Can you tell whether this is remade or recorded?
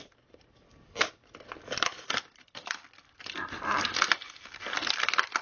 recorded